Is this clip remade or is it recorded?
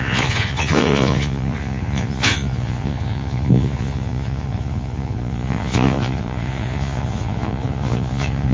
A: remade